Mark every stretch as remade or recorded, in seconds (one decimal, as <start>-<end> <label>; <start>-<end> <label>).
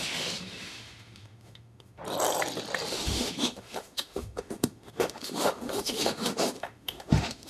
0.0-2.0 remade; 2.0-2.9 recorded; 2.9-7.5 remade